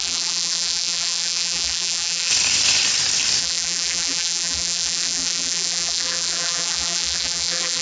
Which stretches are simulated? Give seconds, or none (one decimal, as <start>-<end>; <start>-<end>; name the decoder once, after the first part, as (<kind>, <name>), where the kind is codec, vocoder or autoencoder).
0.0-2.3 (vocoder, BigVGAN v2); 3.4-7.8